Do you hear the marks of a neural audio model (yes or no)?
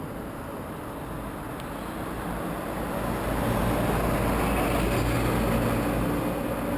no